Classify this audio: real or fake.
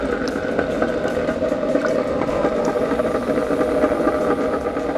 real